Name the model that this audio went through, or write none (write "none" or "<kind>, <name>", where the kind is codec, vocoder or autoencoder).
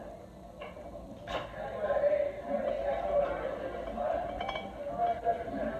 none